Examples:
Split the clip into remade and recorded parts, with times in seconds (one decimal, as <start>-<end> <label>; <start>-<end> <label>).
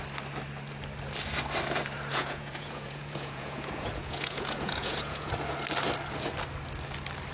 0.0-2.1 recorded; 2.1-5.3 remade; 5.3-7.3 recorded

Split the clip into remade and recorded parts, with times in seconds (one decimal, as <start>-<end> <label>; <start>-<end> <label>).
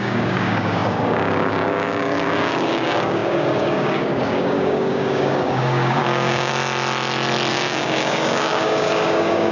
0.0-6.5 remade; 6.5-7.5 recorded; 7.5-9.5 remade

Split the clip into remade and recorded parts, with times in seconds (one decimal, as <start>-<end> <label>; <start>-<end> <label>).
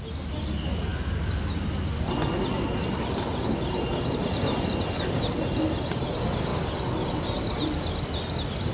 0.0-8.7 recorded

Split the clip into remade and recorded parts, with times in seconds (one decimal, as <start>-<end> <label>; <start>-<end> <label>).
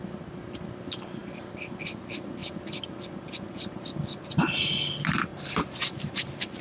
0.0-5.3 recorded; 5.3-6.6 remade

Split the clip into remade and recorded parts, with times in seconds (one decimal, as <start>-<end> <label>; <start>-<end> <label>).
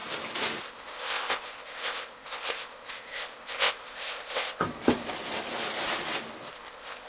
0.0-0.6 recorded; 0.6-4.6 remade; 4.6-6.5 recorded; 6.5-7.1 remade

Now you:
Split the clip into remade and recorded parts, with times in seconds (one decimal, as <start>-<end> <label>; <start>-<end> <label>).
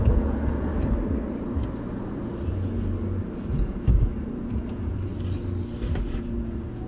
0.0-0.7 remade; 0.7-3.5 recorded; 3.5-5.1 remade; 5.1-6.2 recorded; 6.2-6.9 remade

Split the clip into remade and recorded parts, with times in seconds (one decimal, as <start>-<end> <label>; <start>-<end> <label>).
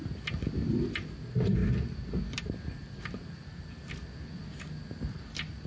0.0-5.7 recorded